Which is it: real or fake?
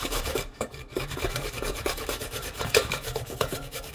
fake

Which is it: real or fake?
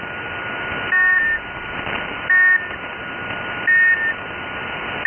real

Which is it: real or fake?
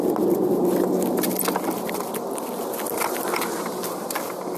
real